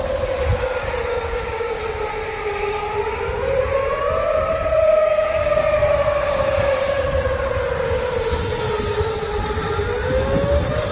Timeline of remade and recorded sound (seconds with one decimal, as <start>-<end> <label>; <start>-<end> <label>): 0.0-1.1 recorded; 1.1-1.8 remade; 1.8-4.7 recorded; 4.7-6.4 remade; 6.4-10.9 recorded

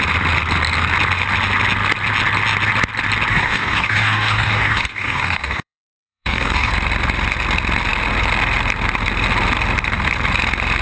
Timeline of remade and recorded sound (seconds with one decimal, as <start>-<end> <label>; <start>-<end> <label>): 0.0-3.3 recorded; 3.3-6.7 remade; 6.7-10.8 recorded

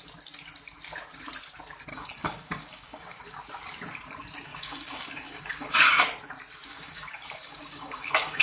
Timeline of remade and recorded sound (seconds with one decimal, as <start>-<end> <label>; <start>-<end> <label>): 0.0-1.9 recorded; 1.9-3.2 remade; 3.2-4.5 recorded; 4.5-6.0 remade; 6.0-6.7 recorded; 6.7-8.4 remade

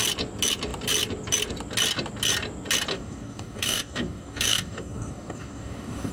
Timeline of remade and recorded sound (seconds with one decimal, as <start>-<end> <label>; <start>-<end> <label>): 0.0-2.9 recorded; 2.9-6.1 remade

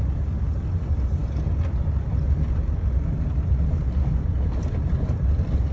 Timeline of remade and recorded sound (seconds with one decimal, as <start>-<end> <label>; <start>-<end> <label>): 0.0-5.7 recorded